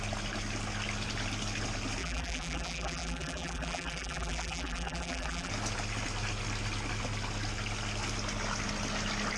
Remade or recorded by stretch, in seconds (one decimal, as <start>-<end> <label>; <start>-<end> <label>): 0.0-2.0 recorded; 2.0-5.5 remade; 5.5-9.4 recorded